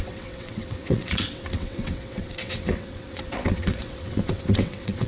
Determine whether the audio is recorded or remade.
remade